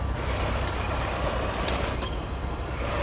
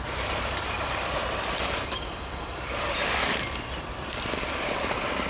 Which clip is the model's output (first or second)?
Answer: second